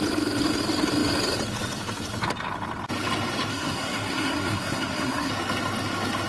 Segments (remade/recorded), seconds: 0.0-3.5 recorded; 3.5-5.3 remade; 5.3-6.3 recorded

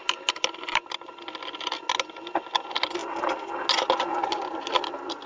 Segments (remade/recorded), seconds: 0.0-5.3 recorded

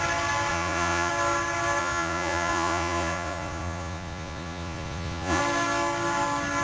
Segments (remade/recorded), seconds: 0.0-0.5 recorded; 0.5-1.1 remade; 1.1-1.8 recorded; 1.8-5.4 remade; 5.4-6.6 recorded

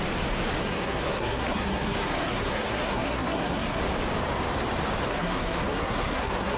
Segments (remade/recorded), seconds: 0.0-0.6 recorded; 0.6-3.8 remade; 3.8-5.1 recorded; 5.1-6.6 remade

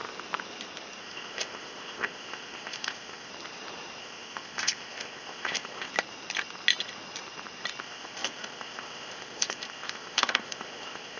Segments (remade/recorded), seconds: 0.0-1.0 recorded; 1.0-3.3 remade; 3.3-4.0 recorded; 4.0-5.9 remade; 5.9-7.8 recorded; 7.8-11.2 remade

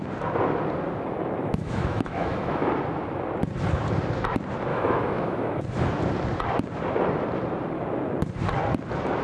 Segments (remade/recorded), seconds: 0.0-1.4 recorded; 1.4-2.7 remade; 2.7-4.7 recorded; 4.7-5.6 remade; 5.6-9.2 recorded